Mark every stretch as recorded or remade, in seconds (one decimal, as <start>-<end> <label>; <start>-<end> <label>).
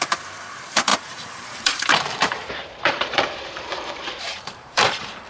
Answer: 0.0-5.3 remade